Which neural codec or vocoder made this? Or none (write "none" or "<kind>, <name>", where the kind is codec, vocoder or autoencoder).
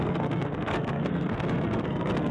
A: codec, SNAC